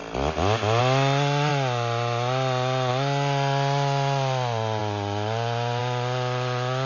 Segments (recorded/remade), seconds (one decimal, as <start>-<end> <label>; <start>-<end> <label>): 0.0-6.9 recorded